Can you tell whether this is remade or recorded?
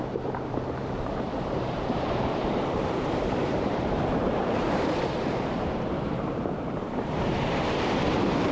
remade